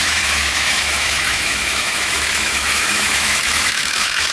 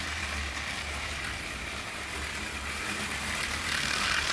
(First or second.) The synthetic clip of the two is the first